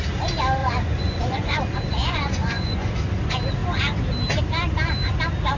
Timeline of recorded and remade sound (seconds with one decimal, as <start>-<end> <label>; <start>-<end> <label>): 0.0-0.6 recorded; 0.6-1.6 remade; 1.6-2.0 recorded; 2.0-2.9 remade; 2.9-5.6 recorded